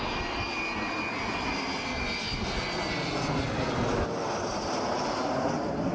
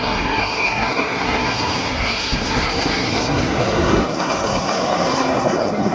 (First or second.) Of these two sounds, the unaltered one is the first